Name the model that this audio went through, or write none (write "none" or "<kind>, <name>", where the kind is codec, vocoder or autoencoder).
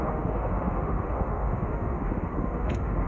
autoencoder, DAC-VAE